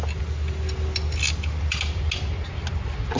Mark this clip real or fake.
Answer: real